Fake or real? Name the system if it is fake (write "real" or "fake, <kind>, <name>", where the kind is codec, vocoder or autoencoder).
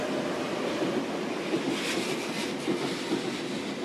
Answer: real